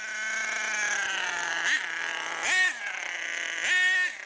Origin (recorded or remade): recorded